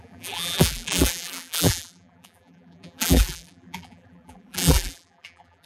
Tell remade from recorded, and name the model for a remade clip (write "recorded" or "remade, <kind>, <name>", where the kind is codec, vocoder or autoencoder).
remade, vocoder, BigVGAN v2